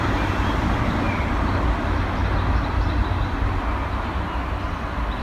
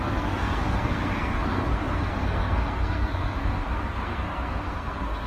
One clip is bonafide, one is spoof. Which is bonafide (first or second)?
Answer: first